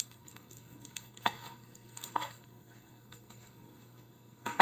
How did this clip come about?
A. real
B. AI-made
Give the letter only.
B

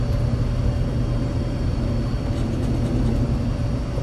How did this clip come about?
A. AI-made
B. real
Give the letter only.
B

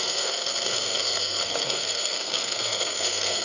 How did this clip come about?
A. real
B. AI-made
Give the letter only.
B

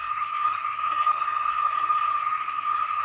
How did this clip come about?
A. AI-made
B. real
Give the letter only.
A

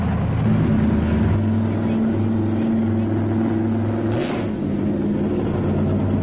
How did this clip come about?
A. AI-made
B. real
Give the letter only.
B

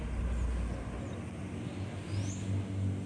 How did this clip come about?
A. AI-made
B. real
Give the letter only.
B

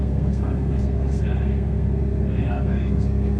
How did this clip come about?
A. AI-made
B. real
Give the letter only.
A